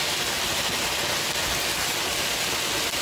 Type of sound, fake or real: real